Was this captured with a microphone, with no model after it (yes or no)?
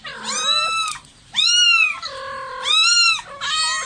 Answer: yes